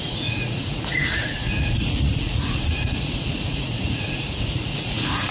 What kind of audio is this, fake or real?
fake